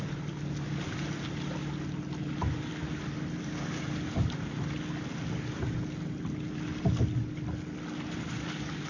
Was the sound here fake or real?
real